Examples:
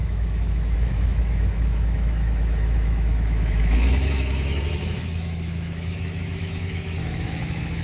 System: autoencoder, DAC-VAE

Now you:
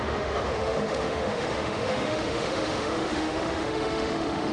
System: autoencoder, DAC-VAE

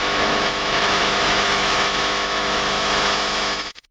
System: autoencoder, DAC-VAE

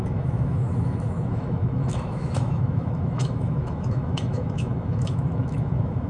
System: autoencoder, DAC-VAE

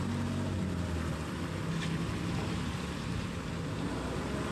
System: none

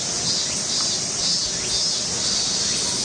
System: none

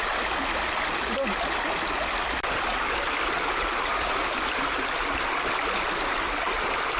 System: none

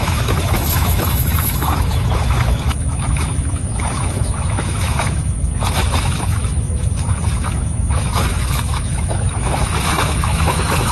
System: autoencoder, DAC-VAE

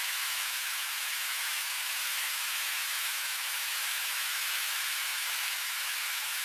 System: autoencoder, DAC-VAE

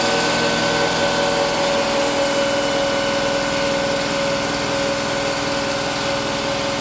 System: none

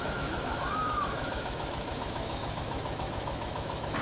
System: autoencoder, DAC-VAE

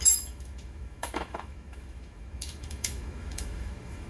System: autoencoder, DAC-VAE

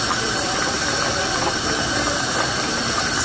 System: none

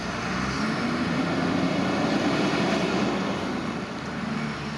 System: none